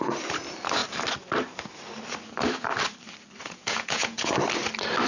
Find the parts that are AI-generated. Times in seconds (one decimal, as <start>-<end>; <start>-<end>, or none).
3.4-4.3